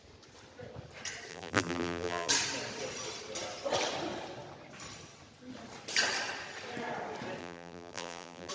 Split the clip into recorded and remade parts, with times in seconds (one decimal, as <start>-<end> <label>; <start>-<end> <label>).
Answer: 0.0-1.3 recorded; 1.3-2.3 remade; 2.3-7.4 recorded; 7.4-8.5 remade

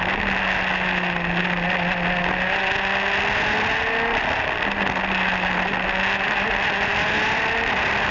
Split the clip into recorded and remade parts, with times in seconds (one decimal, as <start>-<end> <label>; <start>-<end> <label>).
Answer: 0.0-8.1 recorded

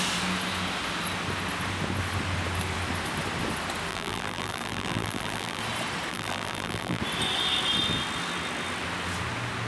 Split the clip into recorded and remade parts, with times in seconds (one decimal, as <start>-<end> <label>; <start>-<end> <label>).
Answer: 0.0-3.9 recorded; 3.9-5.6 remade; 5.6-6.1 recorded; 6.1-7.0 remade; 7.0-9.7 recorded